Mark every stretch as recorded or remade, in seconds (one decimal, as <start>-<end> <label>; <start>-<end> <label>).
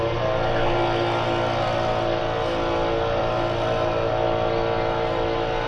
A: 0.0-5.7 recorded